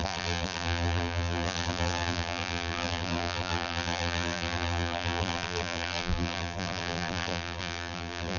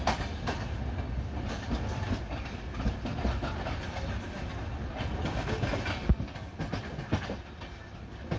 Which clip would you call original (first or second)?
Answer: second